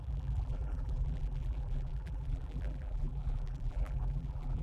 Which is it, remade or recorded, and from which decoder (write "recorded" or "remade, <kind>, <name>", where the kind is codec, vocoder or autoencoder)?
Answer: remade, vocoder, BigVGAN v2